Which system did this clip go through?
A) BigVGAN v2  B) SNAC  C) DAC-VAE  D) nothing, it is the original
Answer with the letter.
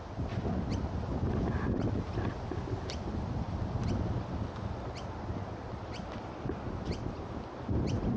D